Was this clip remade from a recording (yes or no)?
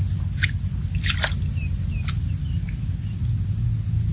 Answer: no